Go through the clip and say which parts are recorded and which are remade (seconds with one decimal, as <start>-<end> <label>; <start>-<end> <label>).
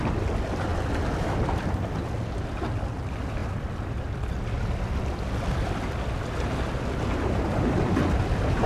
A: 0.0-8.7 recorded